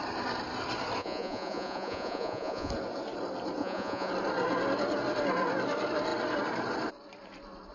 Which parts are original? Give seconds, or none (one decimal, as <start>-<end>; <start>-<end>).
0.0-1.0; 2.7-3.6; 4.1-7.7

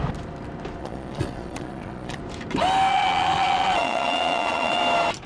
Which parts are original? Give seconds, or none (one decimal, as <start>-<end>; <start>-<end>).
0.0-0.8; 2.2-2.9; 4.8-5.3

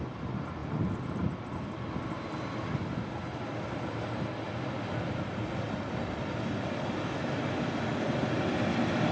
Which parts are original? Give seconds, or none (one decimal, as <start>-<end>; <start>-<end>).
0.0-9.1

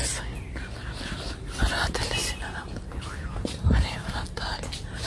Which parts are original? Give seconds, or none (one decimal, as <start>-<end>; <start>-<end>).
0.0-5.1

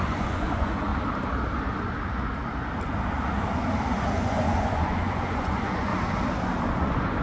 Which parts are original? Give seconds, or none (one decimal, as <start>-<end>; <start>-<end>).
0.9-3.9; 5.9-6.7

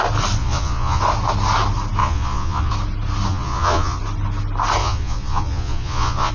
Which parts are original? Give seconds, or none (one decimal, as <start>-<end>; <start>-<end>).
0.0-0.4; 1.0-2.0; 2.7-3.3; 4.0-4.8

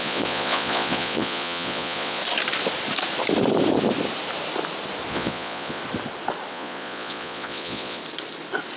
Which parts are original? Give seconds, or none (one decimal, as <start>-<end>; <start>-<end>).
2.2-5.1; 5.8-6.5; 8.0-8.8

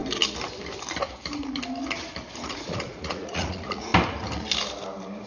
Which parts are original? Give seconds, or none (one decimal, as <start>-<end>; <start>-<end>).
0.0-2.4; 3.9-5.3